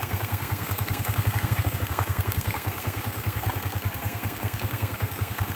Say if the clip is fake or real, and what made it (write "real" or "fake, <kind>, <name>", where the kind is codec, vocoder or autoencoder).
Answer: fake, codec, SNAC